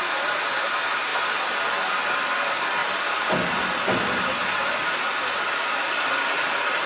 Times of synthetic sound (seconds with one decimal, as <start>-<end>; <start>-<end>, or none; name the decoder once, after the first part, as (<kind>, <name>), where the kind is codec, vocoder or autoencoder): 0.0-1.1 (vocoder, BigVGAN v2); 1.6-2.8; 6.1-6.9